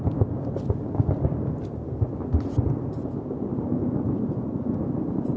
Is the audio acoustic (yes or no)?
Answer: yes